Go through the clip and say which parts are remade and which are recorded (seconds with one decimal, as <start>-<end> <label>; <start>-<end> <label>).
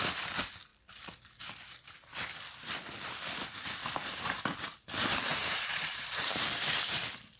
0.0-3.8 recorded; 3.8-4.4 remade; 4.4-5.3 recorded; 5.3-7.0 remade; 7.0-7.4 recorded